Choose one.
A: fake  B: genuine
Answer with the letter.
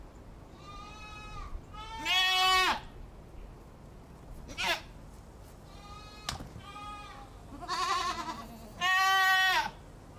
B